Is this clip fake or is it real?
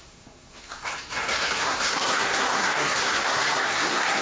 fake